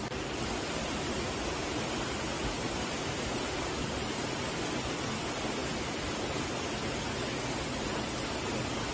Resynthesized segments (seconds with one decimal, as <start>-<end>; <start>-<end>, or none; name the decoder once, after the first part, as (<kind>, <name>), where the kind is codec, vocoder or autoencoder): 0.8-3.3 (vocoder, BigVGAN v2)